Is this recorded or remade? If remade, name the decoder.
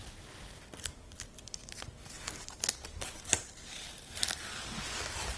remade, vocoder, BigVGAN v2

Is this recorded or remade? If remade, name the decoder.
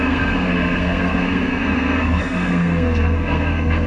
remade, codec, SNAC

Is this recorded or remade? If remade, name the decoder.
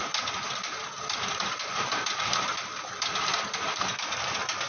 recorded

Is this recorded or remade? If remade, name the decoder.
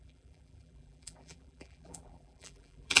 remade, vocoder, BigVGAN v2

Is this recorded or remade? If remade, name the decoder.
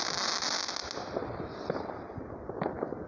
recorded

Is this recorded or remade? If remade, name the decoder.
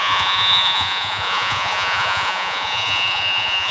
remade, vocoder, Vocos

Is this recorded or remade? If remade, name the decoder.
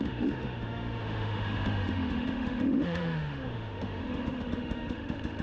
remade, autoencoder, DAC-VAE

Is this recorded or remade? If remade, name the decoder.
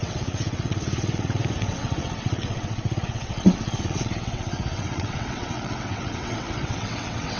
remade, vocoder, WaveNeXt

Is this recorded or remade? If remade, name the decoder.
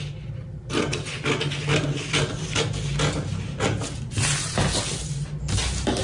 recorded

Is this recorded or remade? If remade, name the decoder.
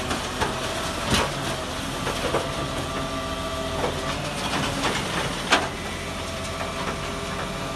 recorded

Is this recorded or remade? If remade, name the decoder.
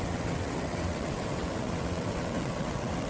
remade, vocoder, WaveNeXt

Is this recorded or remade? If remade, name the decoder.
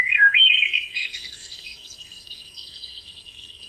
remade, codec, SNAC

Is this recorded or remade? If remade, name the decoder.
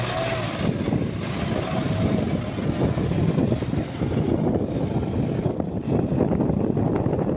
recorded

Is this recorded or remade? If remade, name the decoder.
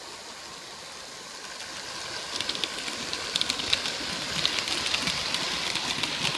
recorded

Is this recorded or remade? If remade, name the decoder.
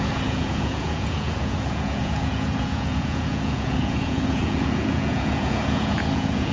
remade, vocoder, Vocos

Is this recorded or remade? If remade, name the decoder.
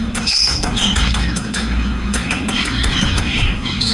remade, codec, SNAC